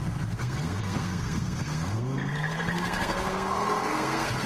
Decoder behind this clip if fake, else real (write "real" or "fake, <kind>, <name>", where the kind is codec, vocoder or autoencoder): fake, codec, SNAC